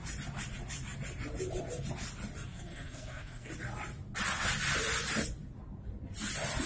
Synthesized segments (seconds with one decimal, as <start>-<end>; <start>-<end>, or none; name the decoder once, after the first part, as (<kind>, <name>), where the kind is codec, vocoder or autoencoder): 2.5-3.5 (codec, SNAC)